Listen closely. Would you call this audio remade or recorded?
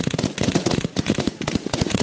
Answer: remade